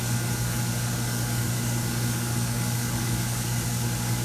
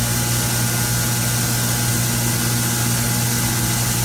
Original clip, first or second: second